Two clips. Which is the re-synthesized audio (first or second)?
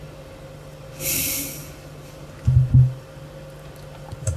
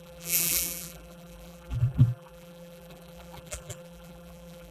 second